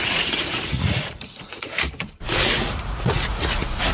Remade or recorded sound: remade